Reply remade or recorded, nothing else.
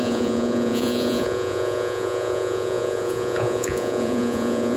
remade